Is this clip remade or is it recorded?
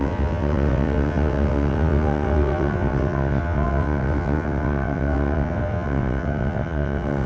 remade